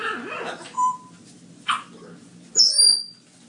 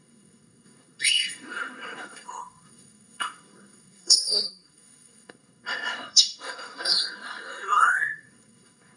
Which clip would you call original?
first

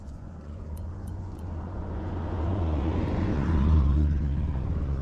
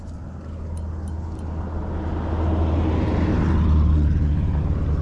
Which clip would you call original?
second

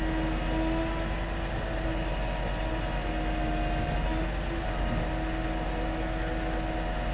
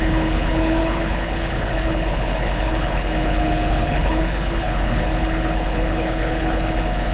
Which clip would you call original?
first